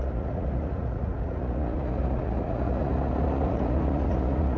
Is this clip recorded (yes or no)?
no